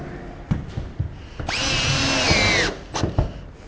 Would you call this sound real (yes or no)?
yes